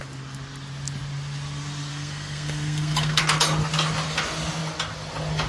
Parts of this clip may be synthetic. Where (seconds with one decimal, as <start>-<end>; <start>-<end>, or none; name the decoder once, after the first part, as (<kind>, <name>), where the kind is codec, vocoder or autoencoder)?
1.9-3.2 (codec, SNAC)